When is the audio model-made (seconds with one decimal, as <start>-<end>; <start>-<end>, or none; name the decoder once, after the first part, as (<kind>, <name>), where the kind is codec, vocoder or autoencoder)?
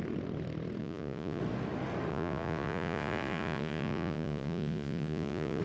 0.8-1.4 (vocoder, Vocos); 2.1-5.6